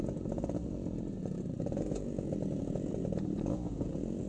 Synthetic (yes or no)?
yes